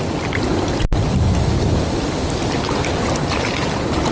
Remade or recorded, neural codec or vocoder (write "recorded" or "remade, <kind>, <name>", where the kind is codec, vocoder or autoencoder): recorded